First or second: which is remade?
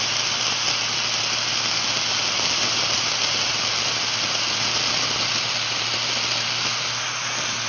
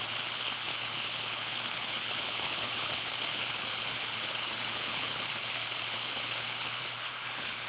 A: second